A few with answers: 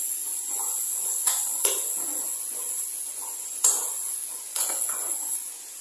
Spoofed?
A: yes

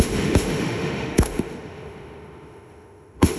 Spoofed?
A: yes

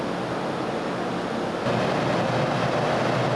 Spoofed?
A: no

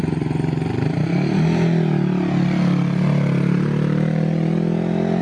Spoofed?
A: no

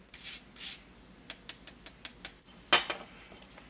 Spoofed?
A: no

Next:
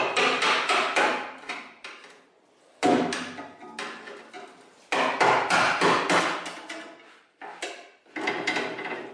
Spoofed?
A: no